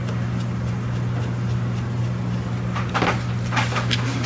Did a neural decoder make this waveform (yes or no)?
no